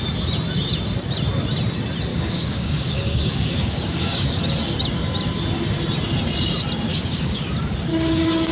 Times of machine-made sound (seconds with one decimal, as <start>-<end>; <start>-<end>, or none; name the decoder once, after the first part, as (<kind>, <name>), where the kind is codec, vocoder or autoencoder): 2.1-4.4 (codec, DAC); 6.9-7.4; 7.9-8.5